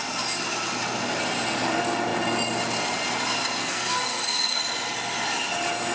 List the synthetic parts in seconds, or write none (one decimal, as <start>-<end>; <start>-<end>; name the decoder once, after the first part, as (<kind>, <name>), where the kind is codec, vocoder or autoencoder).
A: 3.6-4.6 (codec, SNAC)